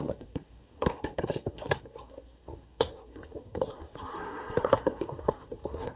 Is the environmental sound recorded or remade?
remade